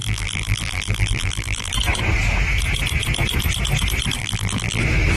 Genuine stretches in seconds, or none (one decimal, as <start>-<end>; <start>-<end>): 1.7-4.2; 4.8-5.2